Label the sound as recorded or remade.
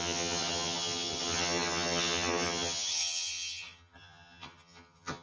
remade